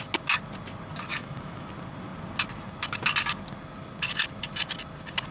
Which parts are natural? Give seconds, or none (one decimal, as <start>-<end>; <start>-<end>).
0.0-1.1; 1.7-5.3